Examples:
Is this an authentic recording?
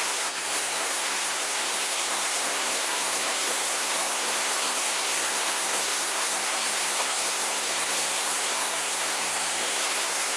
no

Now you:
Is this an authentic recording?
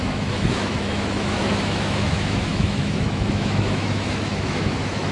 no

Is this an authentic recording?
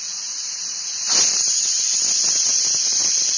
yes